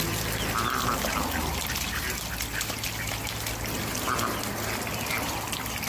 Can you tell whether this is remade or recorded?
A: recorded